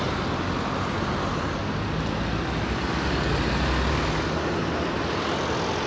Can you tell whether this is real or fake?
real